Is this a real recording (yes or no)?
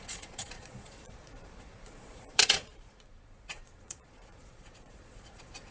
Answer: no